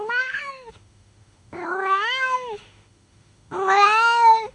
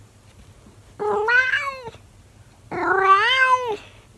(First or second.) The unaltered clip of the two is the second